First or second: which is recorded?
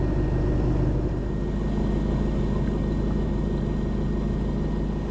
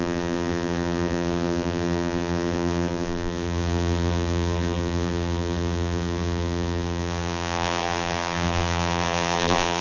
first